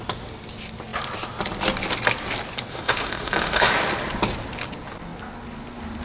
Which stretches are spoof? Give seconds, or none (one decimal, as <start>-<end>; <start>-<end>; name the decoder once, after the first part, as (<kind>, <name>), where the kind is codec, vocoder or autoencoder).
2.7-3.7 (autoencoder, DAC-VAE)